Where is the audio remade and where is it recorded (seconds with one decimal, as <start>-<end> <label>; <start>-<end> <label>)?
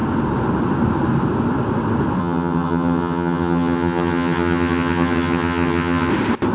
0.0-2.2 recorded; 2.2-6.1 remade; 6.1-6.5 recorded